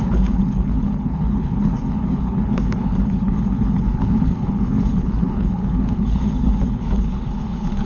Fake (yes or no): yes